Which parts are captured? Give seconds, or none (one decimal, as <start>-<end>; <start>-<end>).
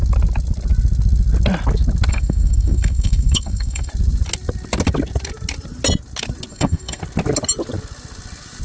0.0-2.1; 3.9-6.5; 7.0-8.6